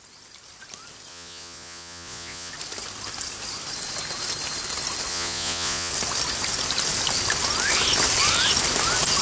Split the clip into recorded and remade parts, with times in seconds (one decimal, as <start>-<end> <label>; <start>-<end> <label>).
0.0-1.1 recorded; 1.1-2.5 remade; 2.5-5.1 recorded; 5.1-5.9 remade; 5.9-9.2 recorded